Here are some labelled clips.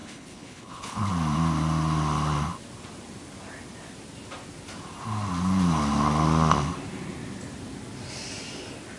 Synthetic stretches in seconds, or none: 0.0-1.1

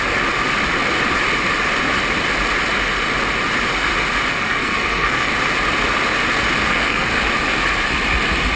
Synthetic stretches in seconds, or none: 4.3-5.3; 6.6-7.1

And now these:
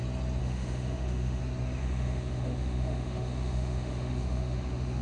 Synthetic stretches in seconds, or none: 0.4-1.4; 1.8-5.0

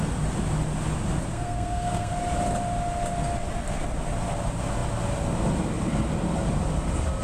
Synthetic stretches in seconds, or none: 1.3-2.1

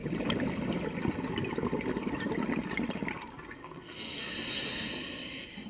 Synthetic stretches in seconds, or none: 3.6-4.3

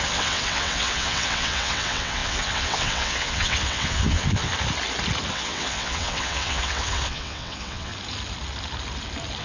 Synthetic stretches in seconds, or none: 0.0-4.5; 5.3-7.9